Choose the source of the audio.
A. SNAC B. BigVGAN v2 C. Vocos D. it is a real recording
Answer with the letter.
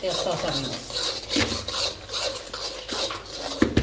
D